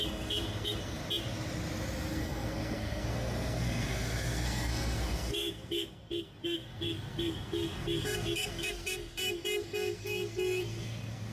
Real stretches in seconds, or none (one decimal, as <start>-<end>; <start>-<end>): 1.0-2.1